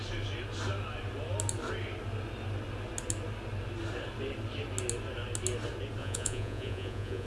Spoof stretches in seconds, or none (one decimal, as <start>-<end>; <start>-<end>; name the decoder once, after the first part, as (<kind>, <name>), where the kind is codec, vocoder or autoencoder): 6.0-7.3 (vocoder, Vocos)